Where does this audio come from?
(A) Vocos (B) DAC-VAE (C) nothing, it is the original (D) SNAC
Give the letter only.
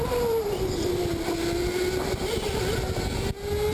C